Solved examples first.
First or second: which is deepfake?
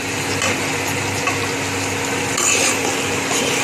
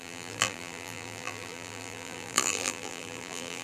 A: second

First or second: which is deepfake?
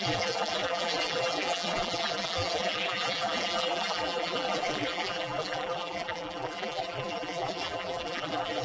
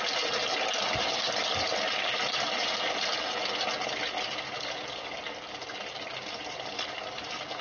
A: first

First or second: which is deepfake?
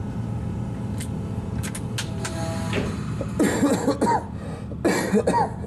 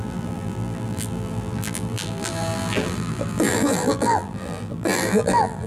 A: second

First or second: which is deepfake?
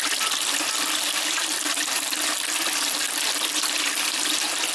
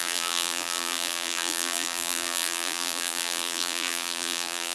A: second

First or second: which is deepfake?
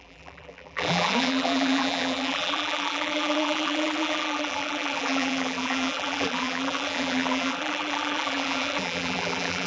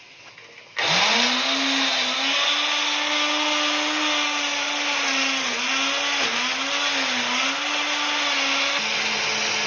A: first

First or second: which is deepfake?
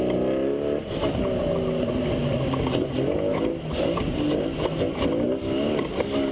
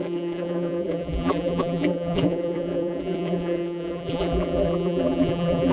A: second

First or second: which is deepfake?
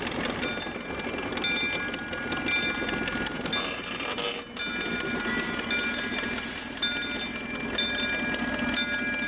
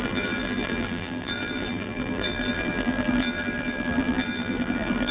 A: second